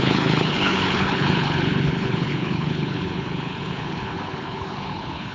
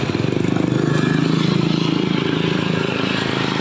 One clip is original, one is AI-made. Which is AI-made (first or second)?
first